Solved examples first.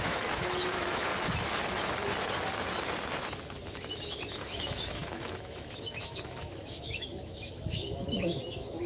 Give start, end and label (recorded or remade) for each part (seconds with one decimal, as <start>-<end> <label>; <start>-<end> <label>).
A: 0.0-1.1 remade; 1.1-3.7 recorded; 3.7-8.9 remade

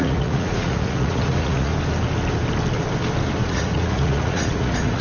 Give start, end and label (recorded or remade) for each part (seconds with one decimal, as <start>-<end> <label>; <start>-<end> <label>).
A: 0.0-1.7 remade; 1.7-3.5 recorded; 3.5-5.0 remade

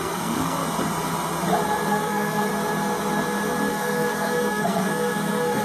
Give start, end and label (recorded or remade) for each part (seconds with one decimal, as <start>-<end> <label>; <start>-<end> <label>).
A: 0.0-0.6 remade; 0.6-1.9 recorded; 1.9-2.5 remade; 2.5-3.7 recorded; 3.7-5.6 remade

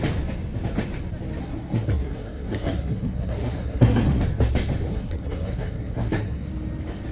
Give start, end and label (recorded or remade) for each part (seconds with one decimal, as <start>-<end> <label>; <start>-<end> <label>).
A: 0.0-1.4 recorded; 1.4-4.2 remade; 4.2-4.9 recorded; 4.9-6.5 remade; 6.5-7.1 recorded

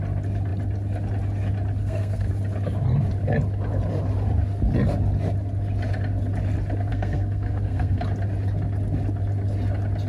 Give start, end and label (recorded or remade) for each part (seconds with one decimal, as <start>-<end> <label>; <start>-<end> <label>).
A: 0.0-1.8 recorded; 1.8-2.3 remade; 2.3-6.9 recorded; 6.9-8.0 remade; 8.0-10.1 recorded